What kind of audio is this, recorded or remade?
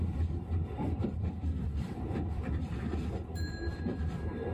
remade